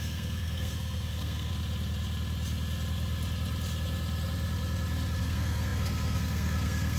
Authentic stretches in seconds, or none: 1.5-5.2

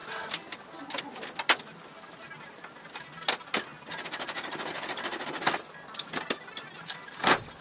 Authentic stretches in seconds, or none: 0.0-7.6

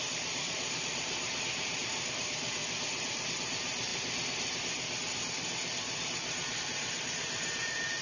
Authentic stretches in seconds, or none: 2.6-3.1; 3.9-6.6

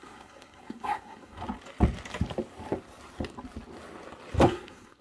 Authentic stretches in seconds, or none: 1.4-4.4

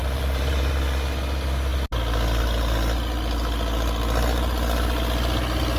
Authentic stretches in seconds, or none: 0.7-5.8

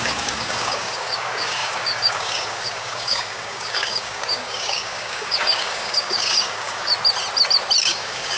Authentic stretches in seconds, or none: 6.9-7.8

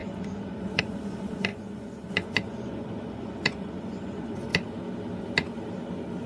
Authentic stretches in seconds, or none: 4.5-6.3